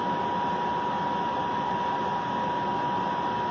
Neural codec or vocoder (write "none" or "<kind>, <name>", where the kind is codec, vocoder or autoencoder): none